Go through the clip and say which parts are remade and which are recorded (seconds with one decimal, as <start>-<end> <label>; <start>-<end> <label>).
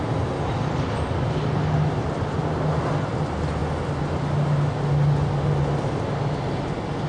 0.0-7.1 recorded